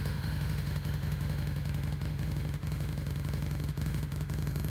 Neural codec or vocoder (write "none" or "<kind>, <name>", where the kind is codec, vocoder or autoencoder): autoencoder, DAC-VAE